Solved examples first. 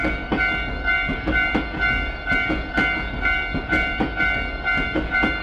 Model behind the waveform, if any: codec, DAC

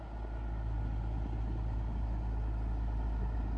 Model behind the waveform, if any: none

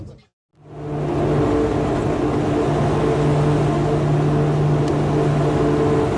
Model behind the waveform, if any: none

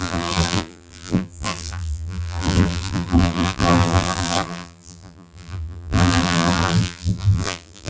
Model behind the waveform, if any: vocoder, BigVGAN v2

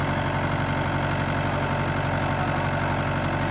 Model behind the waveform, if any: none